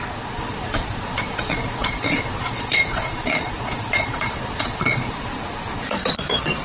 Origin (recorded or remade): remade